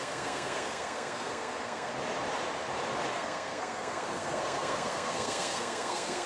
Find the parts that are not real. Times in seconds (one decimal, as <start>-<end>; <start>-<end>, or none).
0.0-1.9; 3.1-6.3